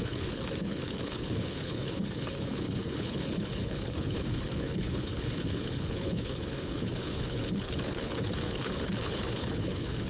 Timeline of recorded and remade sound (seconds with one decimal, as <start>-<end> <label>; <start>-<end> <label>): 0.0-10.1 remade